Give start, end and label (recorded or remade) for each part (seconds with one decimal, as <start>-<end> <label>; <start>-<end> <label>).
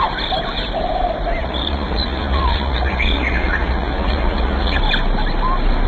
0.0-1.4 recorded; 1.4-4.8 remade; 4.8-5.9 recorded